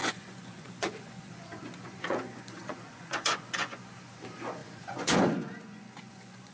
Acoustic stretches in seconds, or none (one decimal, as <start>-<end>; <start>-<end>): none